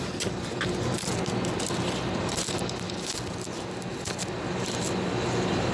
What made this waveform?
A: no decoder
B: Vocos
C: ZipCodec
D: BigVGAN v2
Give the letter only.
A